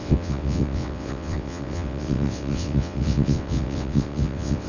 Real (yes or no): no